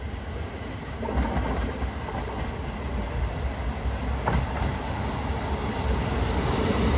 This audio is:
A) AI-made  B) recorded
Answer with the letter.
B